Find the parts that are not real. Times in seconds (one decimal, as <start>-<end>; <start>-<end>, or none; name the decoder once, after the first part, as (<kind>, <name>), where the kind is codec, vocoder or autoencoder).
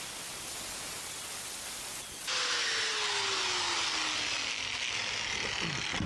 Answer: none